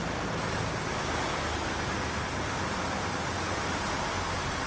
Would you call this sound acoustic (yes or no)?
yes